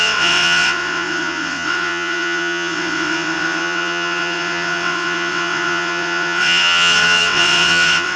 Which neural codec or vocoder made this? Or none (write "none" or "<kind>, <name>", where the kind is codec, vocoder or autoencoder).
vocoder, WaveNeXt